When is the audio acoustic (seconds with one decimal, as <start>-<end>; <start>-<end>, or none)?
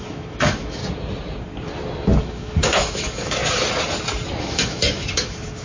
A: 0.8-2.2; 3.4-4.4